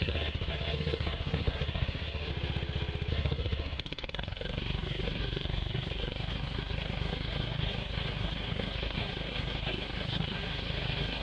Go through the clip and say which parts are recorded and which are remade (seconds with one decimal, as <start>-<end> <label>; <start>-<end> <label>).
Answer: 0.0-2.3 remade; 2.3-3.1 recorded; 3.1-11.2 remade